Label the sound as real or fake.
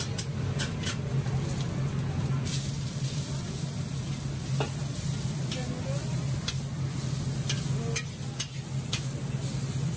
real